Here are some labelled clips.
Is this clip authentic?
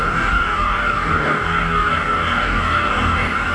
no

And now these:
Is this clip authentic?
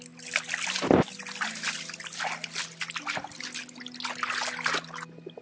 yes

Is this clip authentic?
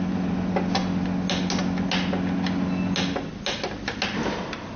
yes